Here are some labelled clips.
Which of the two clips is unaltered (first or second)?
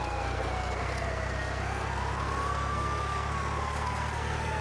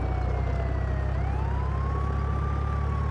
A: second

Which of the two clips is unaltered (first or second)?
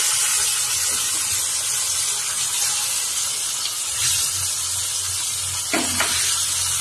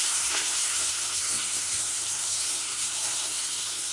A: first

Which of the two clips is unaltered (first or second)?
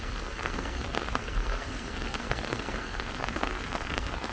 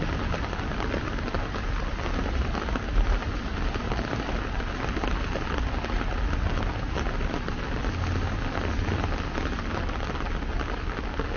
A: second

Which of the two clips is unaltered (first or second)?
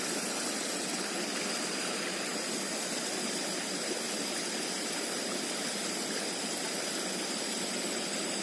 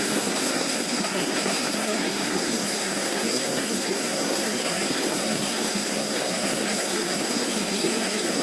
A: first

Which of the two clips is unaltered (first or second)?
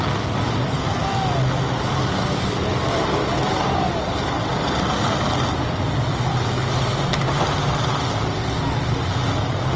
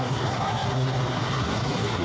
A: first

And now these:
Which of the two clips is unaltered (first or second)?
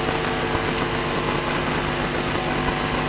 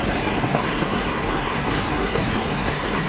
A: first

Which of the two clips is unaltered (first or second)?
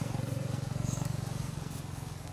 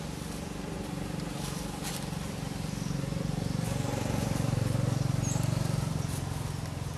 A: second